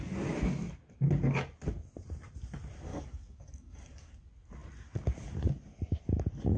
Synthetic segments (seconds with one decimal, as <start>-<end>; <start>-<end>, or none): 2.9-4.1